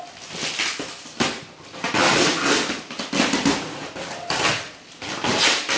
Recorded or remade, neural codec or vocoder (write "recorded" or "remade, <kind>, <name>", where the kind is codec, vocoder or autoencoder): recorded